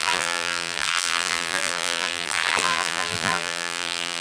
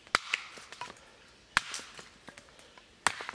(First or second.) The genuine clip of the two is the second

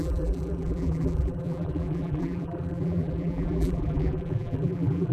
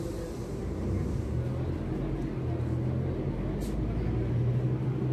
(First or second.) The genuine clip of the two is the second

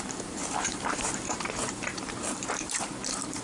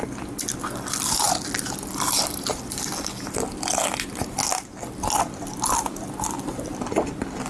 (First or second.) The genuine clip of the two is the second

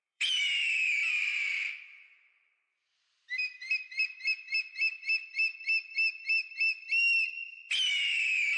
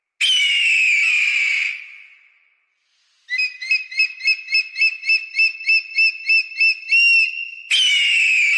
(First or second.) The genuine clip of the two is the second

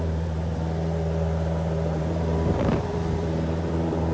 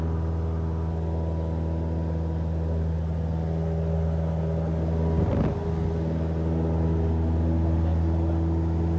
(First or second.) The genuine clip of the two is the second